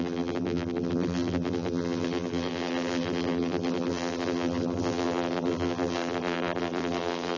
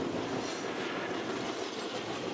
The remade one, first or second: first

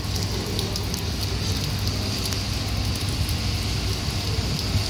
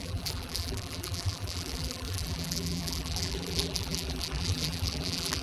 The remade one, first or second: second